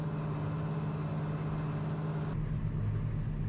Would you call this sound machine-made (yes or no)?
no